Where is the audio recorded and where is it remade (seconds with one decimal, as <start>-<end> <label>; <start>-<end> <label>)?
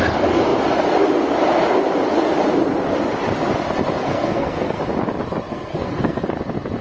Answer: 0.0-4.0 recorded; 4.0-4.8 remade; 4.8-5.5 recorded; 5.5-6.2 remade; 6.2-6.8 recorded